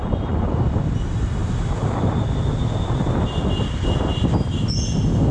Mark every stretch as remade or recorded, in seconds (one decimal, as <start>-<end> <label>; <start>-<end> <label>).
0.0-0.6 remade; 0.6-5.3 recorded